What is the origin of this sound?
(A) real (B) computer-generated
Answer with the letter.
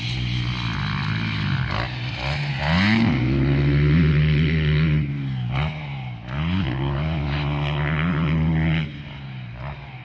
A